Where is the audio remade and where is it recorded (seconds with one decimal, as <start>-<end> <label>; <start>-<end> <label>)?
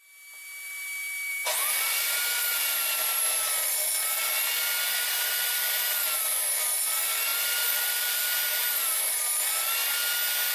0.0-1.3 recorded; 1.3-3.2 remade; 3.2-7.3 recorded; 7.3-8.2 remade; 8.2-10.5 recorded